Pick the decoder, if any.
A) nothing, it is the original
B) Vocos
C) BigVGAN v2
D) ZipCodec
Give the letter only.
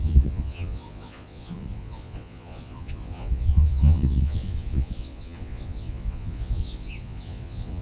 B